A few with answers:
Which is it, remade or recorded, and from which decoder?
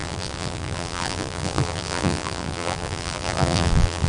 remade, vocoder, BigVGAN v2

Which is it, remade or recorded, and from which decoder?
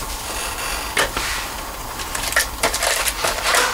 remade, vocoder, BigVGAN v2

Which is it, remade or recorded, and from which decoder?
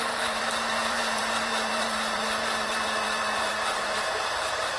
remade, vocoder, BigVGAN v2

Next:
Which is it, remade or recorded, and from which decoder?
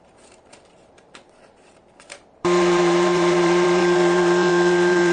remade, vocoder, BigVGAN v2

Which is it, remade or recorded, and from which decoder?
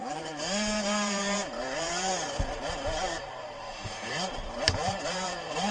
remade, vocoder, BigVGAN v2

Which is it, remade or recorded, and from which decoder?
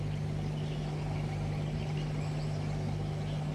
recorded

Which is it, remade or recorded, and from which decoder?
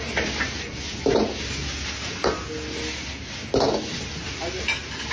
recorded